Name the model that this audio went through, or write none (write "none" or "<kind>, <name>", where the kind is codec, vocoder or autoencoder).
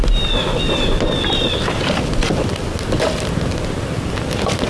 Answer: none